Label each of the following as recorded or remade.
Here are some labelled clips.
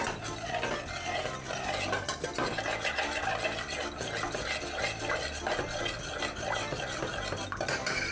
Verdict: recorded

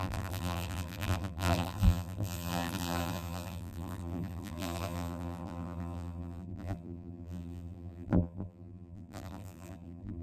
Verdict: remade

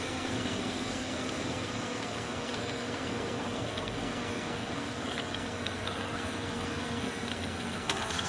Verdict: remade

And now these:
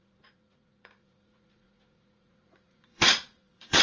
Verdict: remade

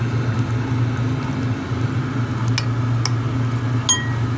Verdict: recorded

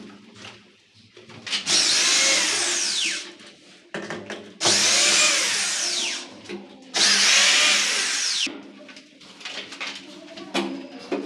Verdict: recorded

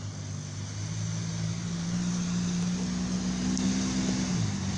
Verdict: recorded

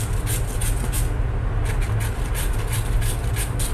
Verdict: recorded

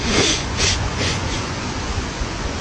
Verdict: remade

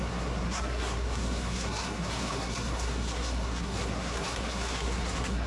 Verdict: remade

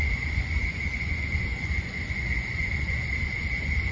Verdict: remade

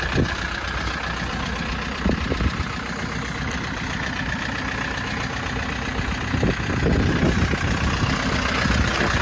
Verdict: recorded